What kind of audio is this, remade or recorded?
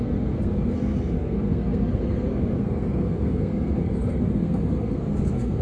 remade